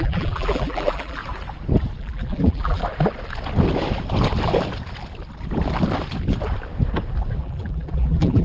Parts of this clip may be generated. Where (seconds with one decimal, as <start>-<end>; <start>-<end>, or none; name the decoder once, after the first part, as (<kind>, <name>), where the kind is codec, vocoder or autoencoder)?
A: 0.0-1.2 (vocoder, BigVGAN v2); 2.0-2.8; 7.4-8.4